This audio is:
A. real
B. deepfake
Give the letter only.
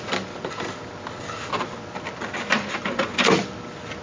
A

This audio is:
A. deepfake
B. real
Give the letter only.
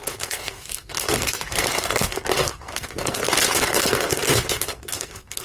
A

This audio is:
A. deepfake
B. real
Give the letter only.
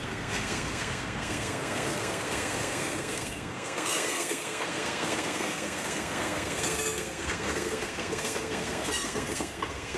A